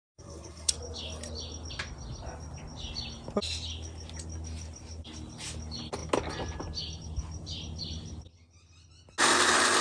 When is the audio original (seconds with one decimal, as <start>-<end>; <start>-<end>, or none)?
0.7-9.8